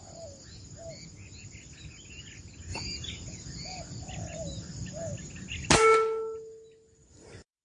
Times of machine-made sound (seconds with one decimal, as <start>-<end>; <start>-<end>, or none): 2.7-5.7